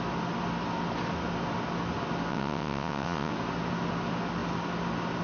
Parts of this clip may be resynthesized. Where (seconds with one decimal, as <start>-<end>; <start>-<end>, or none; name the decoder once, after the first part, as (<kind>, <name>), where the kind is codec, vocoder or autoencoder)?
2.3-3.3 (vocoder, WaveNeXt)